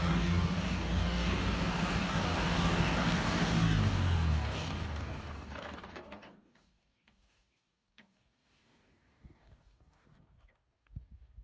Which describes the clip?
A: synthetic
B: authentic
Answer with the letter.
A